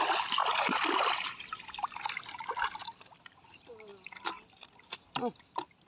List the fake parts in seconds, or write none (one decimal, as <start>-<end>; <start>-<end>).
none